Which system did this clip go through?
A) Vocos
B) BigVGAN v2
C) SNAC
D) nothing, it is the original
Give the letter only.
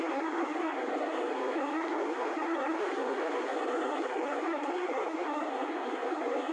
C